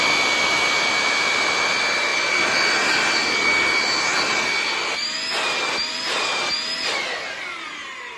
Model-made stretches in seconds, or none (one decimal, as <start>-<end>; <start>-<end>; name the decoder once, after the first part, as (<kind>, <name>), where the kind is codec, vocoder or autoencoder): none

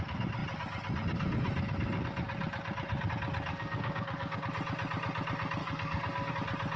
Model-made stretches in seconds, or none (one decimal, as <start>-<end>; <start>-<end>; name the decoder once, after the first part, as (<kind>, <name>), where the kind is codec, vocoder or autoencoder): 3.5-4.4 (codec, SNAC); 5.6-6.3